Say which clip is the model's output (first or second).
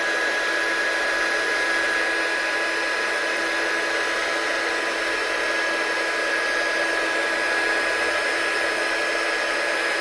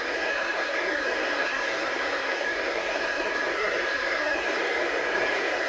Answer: second